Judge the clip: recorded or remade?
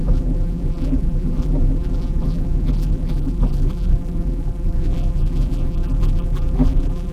remade